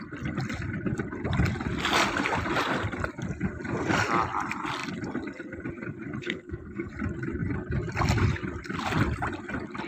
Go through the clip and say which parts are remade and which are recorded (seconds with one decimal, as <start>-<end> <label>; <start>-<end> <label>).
0.0-6.2 recorded; 6.2-6.9 remade; 6.9-9.9 recorded